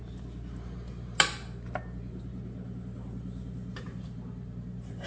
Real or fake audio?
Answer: real